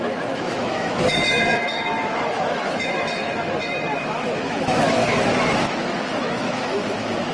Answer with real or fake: fake